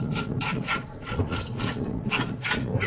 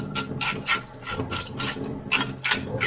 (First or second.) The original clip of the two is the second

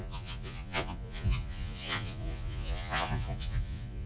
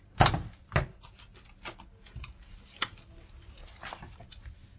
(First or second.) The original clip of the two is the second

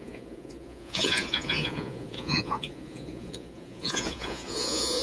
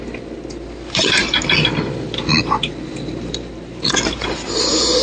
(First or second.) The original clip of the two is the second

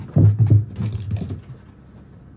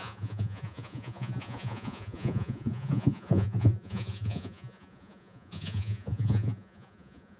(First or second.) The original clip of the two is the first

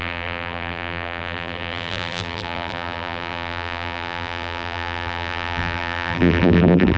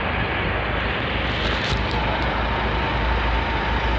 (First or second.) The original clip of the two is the second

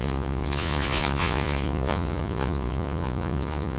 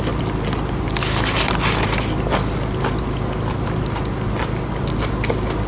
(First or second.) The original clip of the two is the second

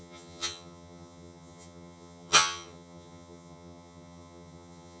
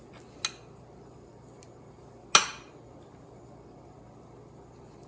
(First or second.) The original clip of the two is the second